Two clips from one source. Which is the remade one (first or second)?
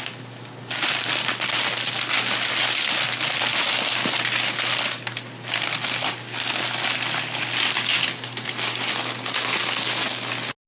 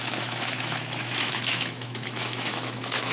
second